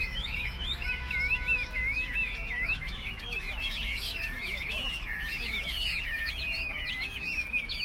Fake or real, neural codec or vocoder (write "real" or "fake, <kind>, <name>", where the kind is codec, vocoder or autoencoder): fake, autoencoder, DAC-VAE